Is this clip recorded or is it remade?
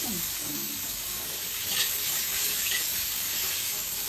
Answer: remade